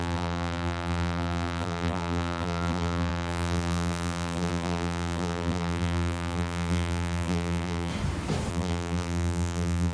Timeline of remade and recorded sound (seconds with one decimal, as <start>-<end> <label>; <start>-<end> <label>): 0.0-7.9 remade; 7.9-8.5 recorded; 8.5-9.9 remade